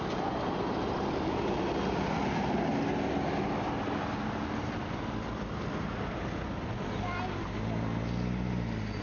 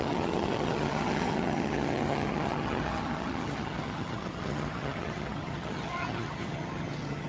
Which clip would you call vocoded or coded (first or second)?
second